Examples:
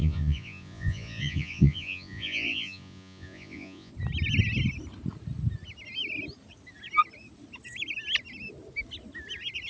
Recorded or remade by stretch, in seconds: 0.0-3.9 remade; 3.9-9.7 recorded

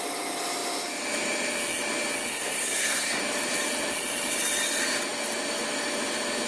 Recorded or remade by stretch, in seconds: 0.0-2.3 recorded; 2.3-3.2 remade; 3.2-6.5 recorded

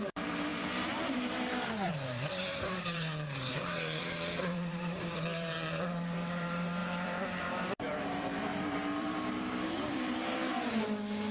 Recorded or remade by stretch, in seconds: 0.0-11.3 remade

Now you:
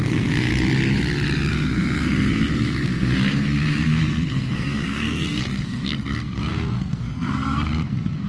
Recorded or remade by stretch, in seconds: 0.0-0.5 remade; 0.5-1.5 recorded; 1.5-8.3 remade

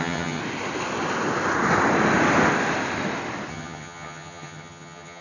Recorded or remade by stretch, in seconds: 0.0-0.4 remade; 0.4-3.5 recorded; 3.5-5.2 remade